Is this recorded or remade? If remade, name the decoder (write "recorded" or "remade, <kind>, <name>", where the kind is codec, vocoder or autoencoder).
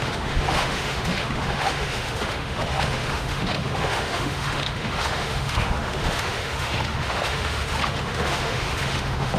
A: remade, autoencoder, DAC-VAE